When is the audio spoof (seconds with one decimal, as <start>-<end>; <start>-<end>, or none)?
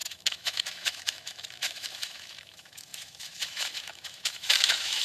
0.0-5.0